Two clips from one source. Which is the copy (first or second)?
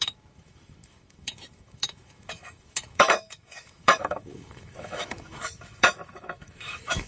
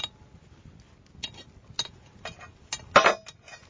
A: first